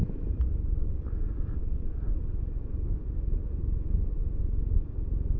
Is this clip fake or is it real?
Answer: real